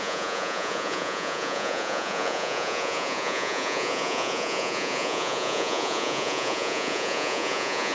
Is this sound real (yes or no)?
no